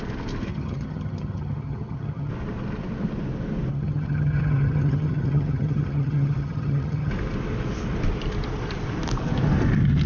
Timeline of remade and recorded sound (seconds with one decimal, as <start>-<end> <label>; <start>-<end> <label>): 0.0-0.5 recorded; 0.5-2.3 remade; 2.3-3.7 recorded; 3.7-7.1 remade; 7.1-10.1 recorded